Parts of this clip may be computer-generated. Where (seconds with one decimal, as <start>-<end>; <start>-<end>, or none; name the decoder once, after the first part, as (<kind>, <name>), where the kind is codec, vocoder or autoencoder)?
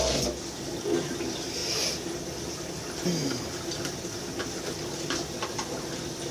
none